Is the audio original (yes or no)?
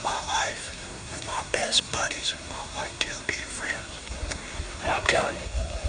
no